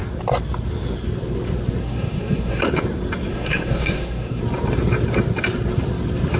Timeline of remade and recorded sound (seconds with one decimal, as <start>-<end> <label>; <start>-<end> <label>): 0.0-1.8 recorded; 1.8-2.6 remade; 2.6-3.3 recorded; 3.3-4.4 remade; 4.4-6.4 recorded